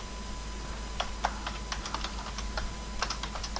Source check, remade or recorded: recorded